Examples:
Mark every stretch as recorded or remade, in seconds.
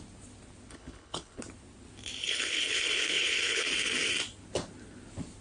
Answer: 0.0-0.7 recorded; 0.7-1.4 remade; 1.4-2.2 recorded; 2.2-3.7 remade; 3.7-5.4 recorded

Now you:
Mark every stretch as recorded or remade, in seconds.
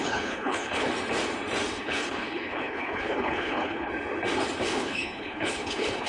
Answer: 0.0-0.9 remade; 0.9-1.8 recorded; 1.8-3.9 remade; 3.9-4.6 recorded; 4.6-6.1 remade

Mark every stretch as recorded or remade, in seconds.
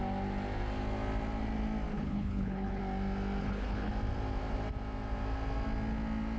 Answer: 0.0-1.9 recorded; 1.9-2.8 remade; 2.8-3.4 recorded; 3.4-3.9 remade; 3.9-6.4 recorded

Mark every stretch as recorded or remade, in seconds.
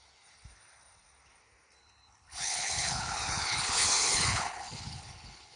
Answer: 0.0-1.8 recorded; 1.8-5.6 remade